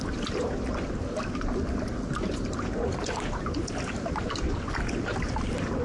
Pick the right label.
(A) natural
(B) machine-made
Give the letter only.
A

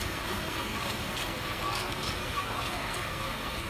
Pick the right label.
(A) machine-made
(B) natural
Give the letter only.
A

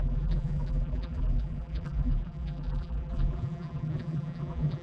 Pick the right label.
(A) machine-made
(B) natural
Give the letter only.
A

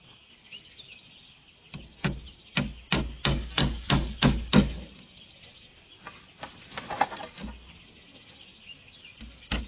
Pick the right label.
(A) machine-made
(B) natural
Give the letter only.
B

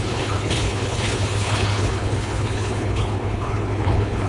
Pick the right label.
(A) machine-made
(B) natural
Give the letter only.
A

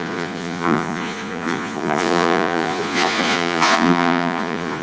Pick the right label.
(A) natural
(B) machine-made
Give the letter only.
B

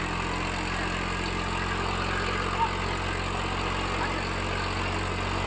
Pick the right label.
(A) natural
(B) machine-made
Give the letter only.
A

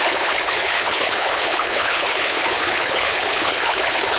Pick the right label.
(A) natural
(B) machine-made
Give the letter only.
B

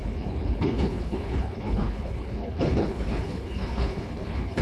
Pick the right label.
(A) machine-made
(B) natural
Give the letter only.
A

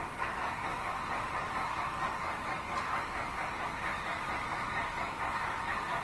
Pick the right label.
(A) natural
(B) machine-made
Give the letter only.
B